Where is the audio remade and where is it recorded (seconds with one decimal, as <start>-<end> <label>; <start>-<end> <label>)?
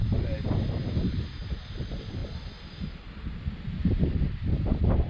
0.0-5.1 recorded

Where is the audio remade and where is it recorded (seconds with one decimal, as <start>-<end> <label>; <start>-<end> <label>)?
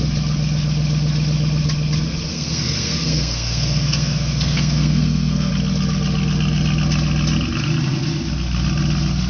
0.0-2.3 recorded; 2.3-5.5 remade; 5.5-9.3 recorded